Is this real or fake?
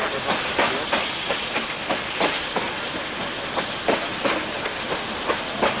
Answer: real